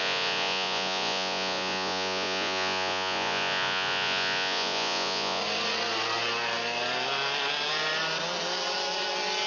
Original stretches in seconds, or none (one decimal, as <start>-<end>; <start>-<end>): 5.4-9.5